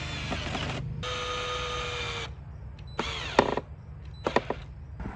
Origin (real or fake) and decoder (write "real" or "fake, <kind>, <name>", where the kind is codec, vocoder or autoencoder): real